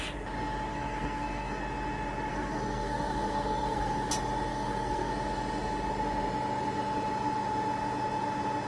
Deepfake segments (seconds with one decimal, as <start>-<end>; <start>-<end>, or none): 0.7-1.6; 2.3-4.1; 4.5-5.1

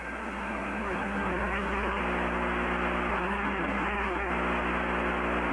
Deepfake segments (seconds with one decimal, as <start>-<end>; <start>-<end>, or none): 0.0-2.0; 3.1-4.3

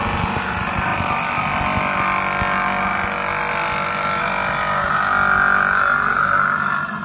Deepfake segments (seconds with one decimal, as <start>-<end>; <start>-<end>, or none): none

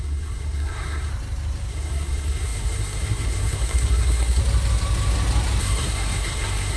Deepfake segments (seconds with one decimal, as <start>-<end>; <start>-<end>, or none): 0.0-1.1; 1.7-4.4; 5.6-6.8

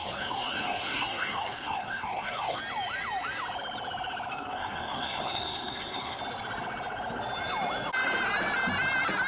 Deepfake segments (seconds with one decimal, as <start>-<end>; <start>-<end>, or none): 0.0-2.6; 4.3-6.2